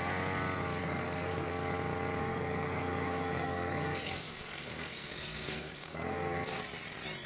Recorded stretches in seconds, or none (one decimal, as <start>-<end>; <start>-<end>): 0.0-0.8; 1.5-2.2; 6.6-7.3